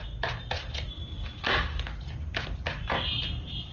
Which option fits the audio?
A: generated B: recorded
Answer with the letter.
B